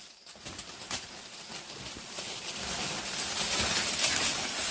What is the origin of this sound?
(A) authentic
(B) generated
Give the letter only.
A